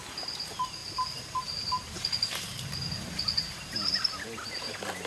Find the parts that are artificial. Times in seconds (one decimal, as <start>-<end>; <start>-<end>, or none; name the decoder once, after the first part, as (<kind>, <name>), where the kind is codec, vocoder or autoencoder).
0.8-3.9 (vocoder, BigVGAN v2)